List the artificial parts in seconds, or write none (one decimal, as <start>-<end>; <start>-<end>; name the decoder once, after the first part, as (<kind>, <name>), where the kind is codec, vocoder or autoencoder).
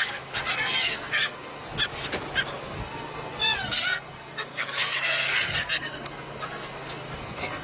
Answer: 0.0-1.7 (codec, SNAC); 2.6-7.6